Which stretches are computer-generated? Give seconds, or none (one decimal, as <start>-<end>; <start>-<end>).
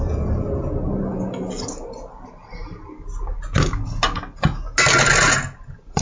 none